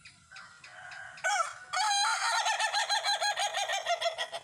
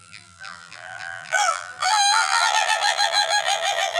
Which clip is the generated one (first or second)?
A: second